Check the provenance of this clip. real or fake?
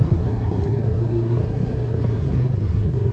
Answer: fake